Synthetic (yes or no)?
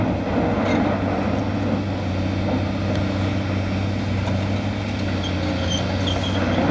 no